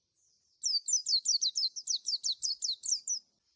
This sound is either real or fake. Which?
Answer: real